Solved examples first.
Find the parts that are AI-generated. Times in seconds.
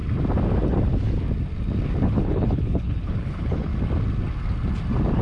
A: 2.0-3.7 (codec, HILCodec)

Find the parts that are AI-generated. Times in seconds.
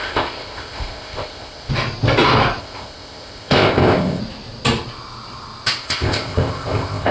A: 0.0-1.7 (codec, ZipCodec); 2.6-4.2; 5.8-7.1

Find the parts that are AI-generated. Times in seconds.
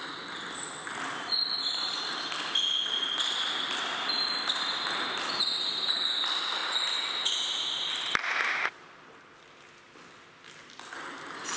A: none